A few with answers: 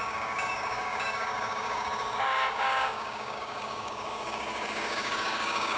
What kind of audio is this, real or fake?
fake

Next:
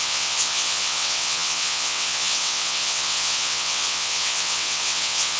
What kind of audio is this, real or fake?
fake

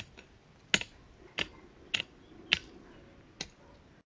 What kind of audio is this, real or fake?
real